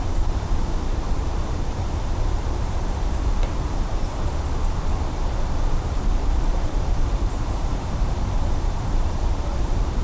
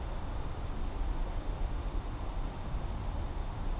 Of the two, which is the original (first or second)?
second